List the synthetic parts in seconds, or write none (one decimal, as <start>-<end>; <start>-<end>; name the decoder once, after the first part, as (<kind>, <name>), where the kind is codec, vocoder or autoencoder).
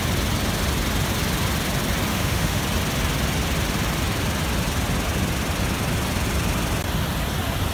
2.1-2.6 (autoencoder, DAC-VAE)